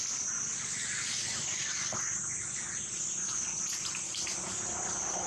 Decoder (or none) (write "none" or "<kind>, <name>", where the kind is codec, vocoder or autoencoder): vocoder, BigVGAN v2